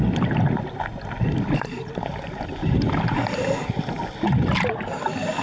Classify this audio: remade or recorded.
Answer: recorded